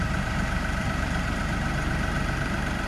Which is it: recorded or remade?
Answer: remade